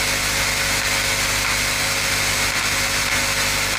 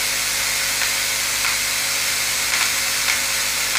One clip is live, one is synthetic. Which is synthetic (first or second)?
second